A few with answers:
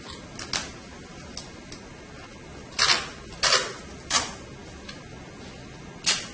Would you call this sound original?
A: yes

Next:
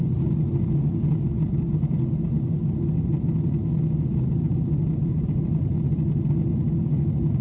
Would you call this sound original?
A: yes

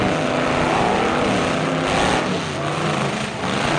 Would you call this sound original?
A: yes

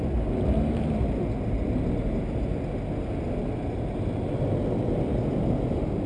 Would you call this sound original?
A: yes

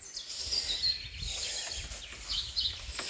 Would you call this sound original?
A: yes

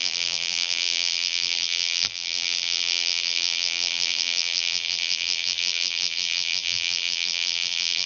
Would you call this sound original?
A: no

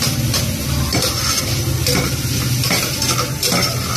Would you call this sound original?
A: yes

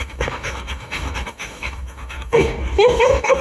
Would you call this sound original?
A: no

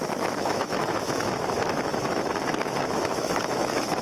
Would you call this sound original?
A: no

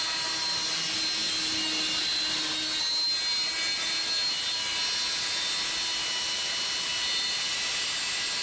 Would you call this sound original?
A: yes